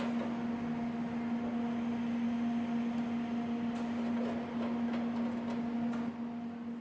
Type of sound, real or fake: real